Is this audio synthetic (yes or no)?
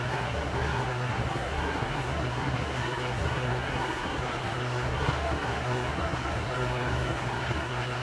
yes